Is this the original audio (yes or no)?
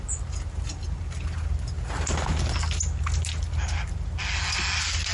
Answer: yes